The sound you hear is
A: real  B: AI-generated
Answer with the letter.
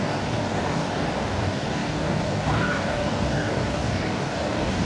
B